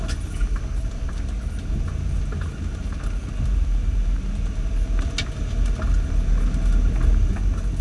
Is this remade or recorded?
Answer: recorded